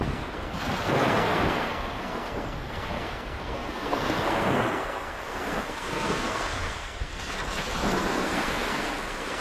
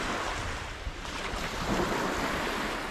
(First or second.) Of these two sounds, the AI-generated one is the first